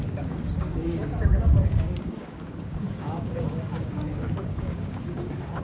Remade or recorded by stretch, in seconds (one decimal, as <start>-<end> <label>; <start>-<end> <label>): 0.0-5.6 remade